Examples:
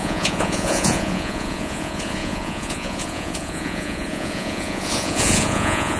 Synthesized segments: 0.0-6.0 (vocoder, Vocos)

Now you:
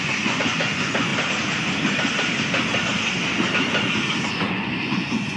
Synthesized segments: 0.0-1.1 (vocoder, Vocos); 4.3-5.4

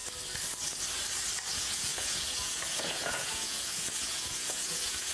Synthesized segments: 1.5-5.1 (vocoder, Vocos)

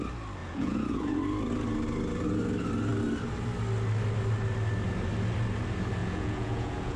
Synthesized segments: 0.4-1.1 (vocoder, Vocos); 6.0-7.0

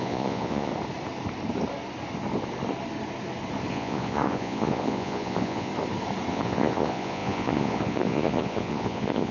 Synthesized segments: 0.0-0.7 (vocoder, Vocos); 3.7-5.7; 6.3-9.3

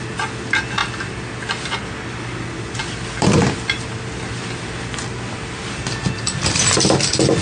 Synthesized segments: none

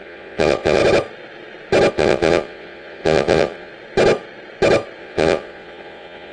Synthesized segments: 0.0-0.8 (vocoder, Vocos); 1.9-3.7; 5.0-6.3